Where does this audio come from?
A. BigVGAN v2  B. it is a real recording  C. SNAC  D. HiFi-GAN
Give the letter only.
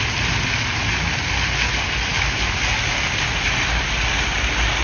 B